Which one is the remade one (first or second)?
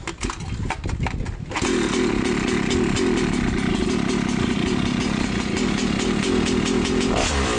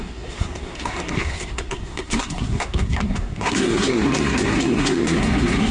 second